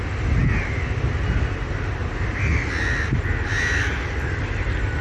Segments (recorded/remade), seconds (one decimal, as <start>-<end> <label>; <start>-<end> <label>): 0.0-5.0 recorded